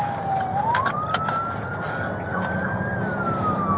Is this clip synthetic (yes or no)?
no